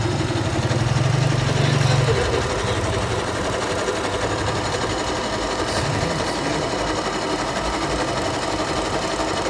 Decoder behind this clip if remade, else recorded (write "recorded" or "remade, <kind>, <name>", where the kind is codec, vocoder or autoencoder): recorded